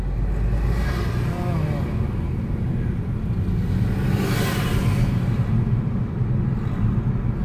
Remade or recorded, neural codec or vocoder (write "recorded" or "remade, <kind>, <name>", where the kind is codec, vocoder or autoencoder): recorded